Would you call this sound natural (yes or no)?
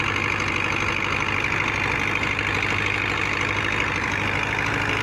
yes